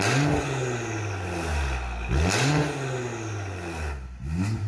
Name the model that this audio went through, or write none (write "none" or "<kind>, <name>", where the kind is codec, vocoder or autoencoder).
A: none